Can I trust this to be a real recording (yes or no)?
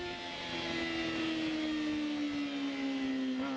yes